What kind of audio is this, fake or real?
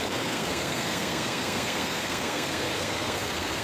fake